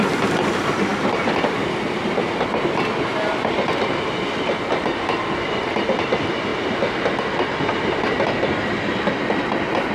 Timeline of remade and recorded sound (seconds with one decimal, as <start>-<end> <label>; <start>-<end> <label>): 0.0-9.9 recorded